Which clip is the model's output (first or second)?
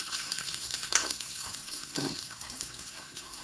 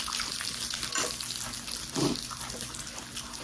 first